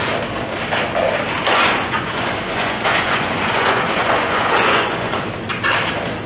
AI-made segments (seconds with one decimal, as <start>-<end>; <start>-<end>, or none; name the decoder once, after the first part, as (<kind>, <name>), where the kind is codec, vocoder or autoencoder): 1.4-5.2 (vocoder, Vocos)